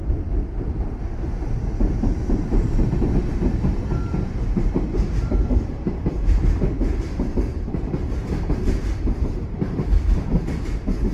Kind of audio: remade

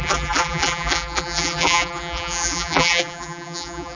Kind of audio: remade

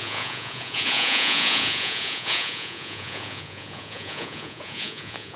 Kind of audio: remade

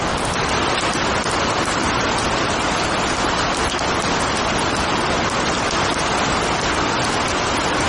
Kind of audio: recorded